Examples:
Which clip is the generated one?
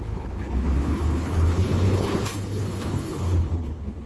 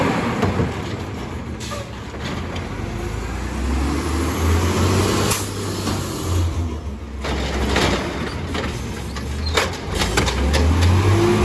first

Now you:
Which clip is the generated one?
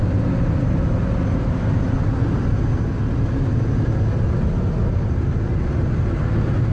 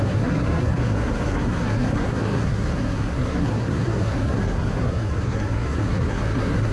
second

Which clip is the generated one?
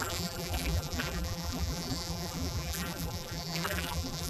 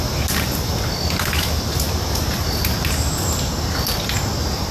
first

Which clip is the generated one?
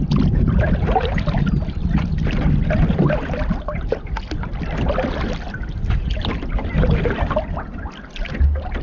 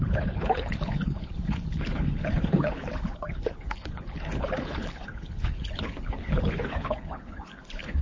second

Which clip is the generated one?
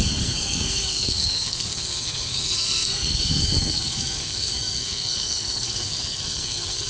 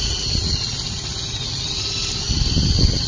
first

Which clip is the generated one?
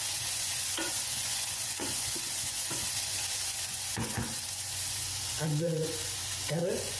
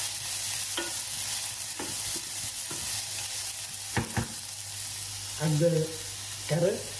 first